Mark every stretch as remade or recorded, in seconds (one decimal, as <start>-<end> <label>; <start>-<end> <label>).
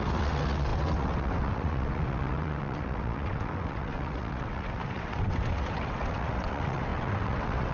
0.0-7.7 remade